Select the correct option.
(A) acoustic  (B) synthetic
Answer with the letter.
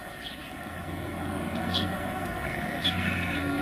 B